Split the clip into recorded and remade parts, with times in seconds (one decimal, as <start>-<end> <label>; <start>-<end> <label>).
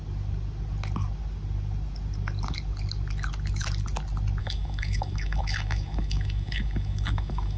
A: 0.0-4.4 recorded; 4.4-7.6 remade